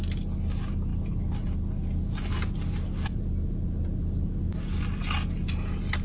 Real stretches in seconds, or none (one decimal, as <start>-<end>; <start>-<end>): 0.0-6.0